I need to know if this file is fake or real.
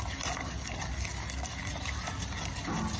real